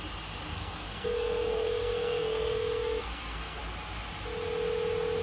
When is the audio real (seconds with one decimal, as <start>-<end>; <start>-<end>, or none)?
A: 0.0-0.5; 3.6-5.2